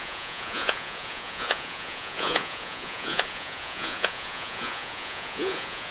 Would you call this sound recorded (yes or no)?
no